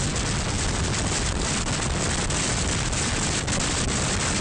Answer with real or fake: real